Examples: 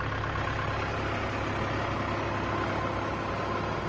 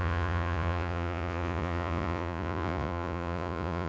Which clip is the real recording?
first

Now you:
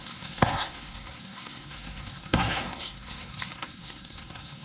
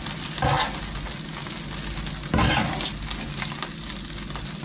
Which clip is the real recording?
second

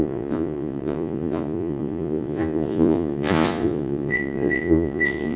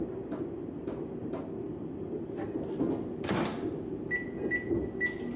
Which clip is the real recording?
second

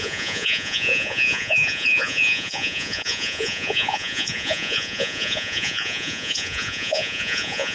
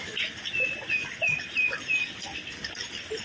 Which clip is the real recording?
second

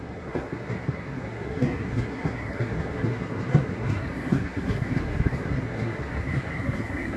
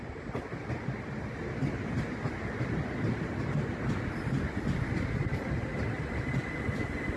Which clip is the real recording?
second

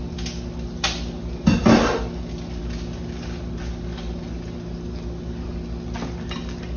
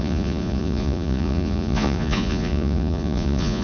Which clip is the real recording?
first